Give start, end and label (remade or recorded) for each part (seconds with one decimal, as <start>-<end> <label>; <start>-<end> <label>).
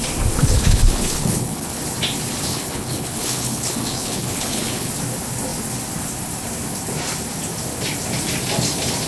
0.0-0.4 recorded; 0.4-1.8 remade; 1.8-2.5 recorded; 2.5-4.9 remade; 4.9-9.1 recorded